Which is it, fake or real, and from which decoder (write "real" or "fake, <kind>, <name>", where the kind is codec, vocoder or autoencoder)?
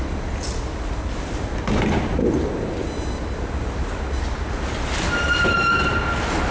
real